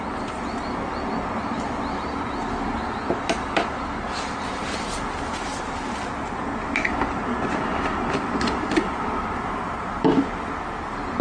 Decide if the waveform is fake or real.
real